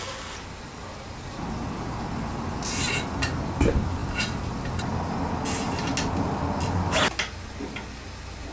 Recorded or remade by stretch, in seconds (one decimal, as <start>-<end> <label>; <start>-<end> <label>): 0.0-8.5 recorded